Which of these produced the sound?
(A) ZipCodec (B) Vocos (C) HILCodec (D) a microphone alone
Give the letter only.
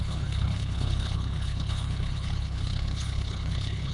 C